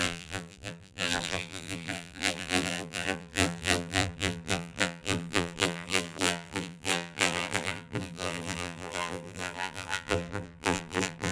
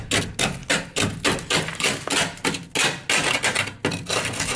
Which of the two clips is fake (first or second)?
first